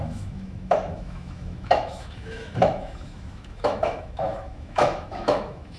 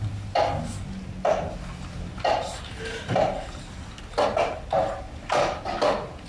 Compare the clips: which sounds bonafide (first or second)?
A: second